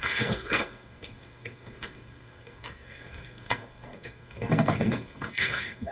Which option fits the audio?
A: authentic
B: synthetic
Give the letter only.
B